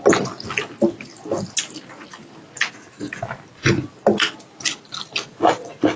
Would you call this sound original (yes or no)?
yes